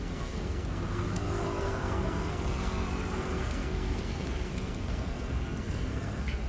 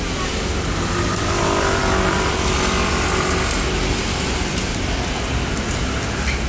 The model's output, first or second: first